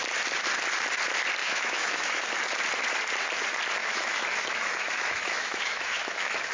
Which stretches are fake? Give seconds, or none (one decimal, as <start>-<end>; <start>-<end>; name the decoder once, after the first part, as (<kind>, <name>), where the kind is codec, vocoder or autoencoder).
1.4-2.2 (autoencoder, DAC-VAE); 3.8-6.5